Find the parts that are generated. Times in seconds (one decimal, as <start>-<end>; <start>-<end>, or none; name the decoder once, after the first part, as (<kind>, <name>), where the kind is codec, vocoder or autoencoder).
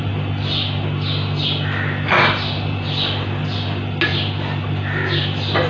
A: none